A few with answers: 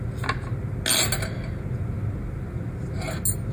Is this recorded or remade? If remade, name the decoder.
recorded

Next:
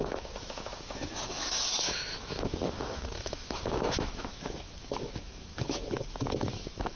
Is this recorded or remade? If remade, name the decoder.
remade, autoencoder, DAC-VAE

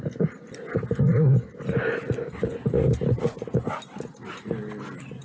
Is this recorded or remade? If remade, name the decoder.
recorded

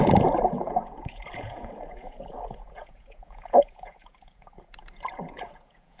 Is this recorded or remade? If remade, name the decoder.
remade, vocoder, Vocos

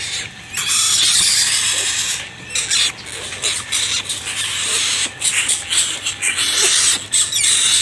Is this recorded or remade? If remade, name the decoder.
recorded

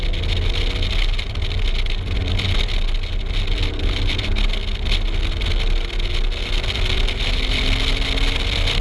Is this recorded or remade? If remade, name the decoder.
recorded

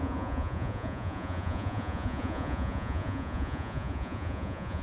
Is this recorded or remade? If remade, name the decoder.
remade, vocoder, Vocos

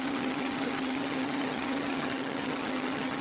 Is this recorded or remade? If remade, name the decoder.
remade, vocoder, HiFi-GAN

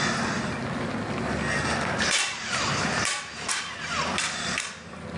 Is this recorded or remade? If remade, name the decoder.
recorded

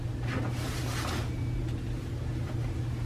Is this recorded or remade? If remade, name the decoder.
recorded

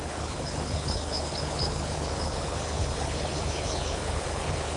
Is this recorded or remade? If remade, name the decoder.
remade, codec, HILCodec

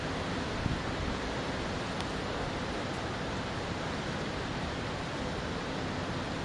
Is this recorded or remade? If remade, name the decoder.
recorded